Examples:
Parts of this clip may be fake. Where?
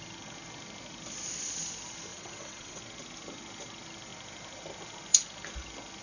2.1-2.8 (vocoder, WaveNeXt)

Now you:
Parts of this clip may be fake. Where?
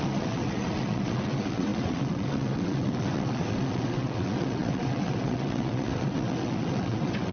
0.0-7.3 (vocoder, WaveNeXt)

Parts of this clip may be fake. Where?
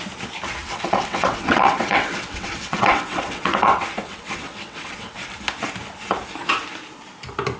0.6-5.1 (vocoder, WaveNeXt)